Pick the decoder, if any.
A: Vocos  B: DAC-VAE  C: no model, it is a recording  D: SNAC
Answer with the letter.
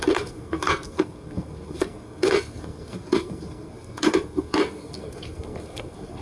D